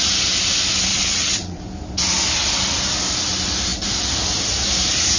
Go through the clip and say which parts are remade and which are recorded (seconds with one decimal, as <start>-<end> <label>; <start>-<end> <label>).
0.0-0.9 recorded; 0.9-1.6 remade; 1.6-5.2 recorded